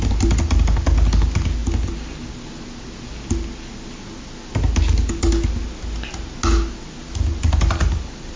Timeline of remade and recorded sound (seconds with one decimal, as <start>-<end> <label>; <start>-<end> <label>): 0.0-8.4 recorded